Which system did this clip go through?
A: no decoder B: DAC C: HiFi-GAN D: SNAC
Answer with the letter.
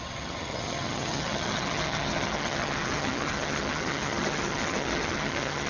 C